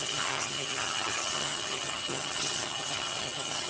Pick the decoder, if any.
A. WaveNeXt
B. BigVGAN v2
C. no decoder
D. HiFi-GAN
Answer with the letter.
D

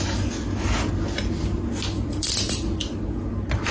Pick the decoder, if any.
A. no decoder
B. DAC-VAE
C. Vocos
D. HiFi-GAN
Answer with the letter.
A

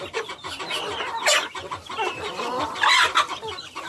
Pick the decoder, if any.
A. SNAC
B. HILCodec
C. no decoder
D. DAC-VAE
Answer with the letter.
C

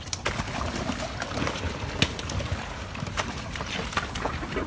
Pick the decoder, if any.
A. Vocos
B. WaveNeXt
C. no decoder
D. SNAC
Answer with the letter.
C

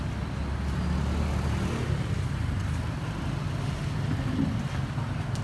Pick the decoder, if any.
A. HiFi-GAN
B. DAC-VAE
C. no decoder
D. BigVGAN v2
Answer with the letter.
C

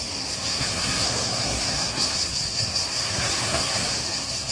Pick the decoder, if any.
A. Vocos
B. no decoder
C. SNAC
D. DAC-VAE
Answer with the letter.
C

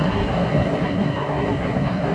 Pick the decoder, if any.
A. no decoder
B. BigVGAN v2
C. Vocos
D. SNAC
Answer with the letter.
D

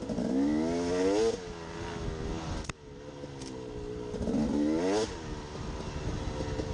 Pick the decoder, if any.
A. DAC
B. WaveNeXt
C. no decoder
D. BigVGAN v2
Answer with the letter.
C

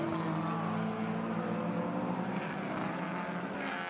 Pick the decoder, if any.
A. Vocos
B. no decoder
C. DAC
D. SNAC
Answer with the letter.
B